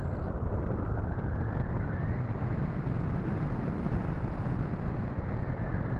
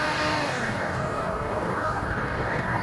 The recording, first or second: first